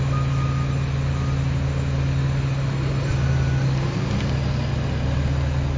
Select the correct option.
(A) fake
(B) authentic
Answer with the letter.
B